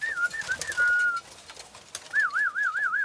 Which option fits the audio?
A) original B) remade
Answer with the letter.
A